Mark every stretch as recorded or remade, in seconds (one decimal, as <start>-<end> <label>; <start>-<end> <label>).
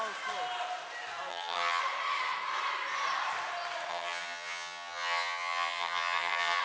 0.0-1.3 recorded; 1.3-1.8 remade; 1.8-3.9 recorded; 3.9-6.6 remade